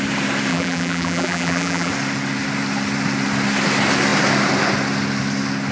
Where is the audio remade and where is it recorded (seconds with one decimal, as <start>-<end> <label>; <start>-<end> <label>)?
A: 0.0-0.5 recorded; 0.5-1.9 remade; 1.9-5.7 recorded